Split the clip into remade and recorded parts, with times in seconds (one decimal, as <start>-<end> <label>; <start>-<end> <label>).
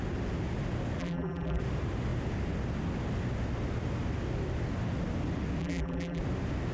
0.0-1.0 recorded; 1.0-1.6 remade; 1.6-5.6 recorded; 5.6-6.2 remade; 6.2-6.7 recorded